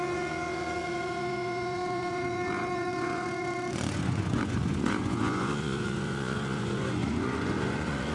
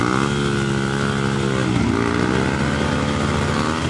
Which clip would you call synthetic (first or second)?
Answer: first